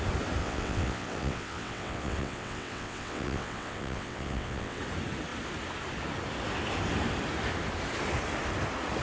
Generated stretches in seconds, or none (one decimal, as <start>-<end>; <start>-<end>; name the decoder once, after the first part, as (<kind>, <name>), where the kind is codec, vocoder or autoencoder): 0.4-4.8 (vocoder, WaveNeXt)